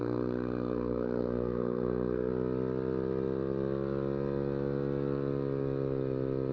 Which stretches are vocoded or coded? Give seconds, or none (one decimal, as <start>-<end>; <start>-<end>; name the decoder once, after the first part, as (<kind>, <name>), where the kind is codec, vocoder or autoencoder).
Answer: 0.0-2.3 (codec, SNAC)